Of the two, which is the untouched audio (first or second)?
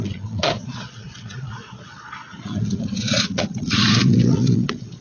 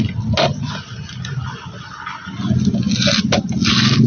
second